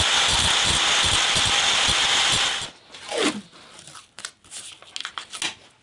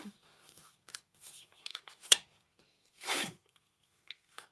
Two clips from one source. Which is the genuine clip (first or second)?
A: first